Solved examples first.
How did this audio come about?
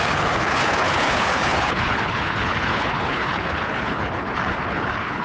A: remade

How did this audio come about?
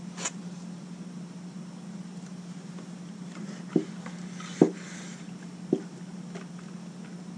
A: recorded